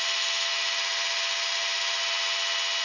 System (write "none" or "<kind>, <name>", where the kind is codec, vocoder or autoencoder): none